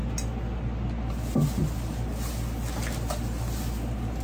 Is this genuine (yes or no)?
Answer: yes